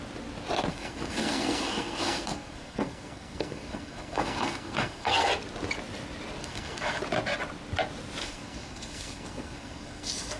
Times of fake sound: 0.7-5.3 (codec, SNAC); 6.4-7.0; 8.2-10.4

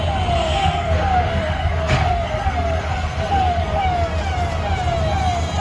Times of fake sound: 0.4-3.8 (codec, SNAC)